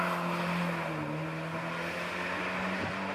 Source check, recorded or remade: recorded